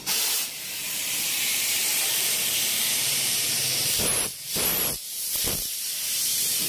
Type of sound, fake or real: fake